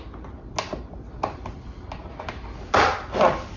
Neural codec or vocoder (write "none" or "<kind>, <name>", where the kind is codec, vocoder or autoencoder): none